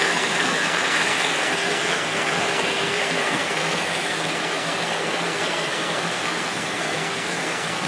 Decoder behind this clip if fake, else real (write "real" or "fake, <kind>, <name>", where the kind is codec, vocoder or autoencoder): fake, codec, SNAC